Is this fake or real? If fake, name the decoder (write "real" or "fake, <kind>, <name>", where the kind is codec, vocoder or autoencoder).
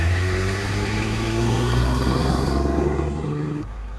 fake, codec, SNAC